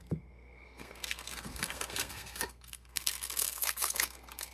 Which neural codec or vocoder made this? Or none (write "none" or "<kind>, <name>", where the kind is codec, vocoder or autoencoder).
codec, SNAC